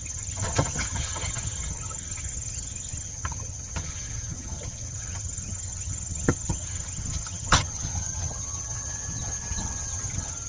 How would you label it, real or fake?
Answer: fake